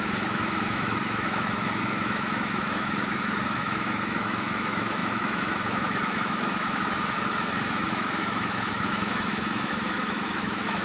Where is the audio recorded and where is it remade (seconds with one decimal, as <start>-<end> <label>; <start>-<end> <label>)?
0.0-10.8 remade